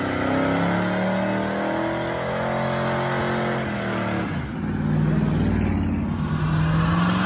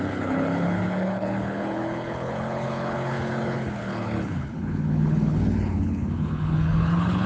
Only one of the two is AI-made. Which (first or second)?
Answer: second